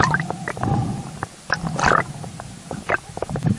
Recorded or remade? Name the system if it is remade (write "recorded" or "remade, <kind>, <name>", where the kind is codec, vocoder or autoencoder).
recorded